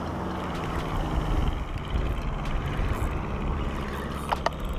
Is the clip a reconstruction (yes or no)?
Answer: no